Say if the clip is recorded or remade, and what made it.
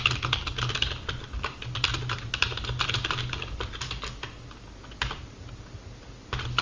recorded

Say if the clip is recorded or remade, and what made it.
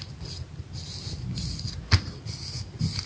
recorded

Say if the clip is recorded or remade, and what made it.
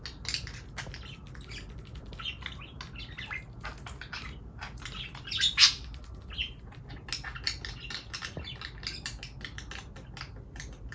recorded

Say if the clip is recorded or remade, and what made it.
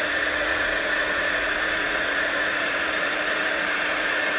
remade, vocoder, Vocos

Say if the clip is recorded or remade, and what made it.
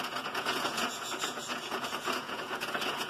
remade, vocoder, Vocos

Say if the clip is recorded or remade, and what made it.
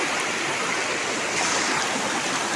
recorded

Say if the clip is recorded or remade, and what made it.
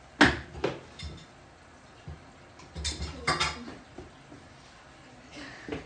recorded